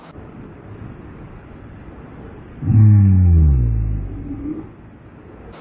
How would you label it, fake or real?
real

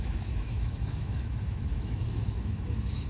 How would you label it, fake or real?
fake